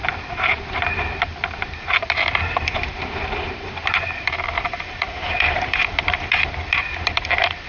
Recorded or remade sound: remade